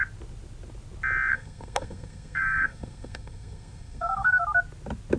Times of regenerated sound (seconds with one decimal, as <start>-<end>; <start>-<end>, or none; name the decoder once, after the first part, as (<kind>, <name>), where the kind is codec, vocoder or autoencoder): 1.3-4.4 (codec, SNAC)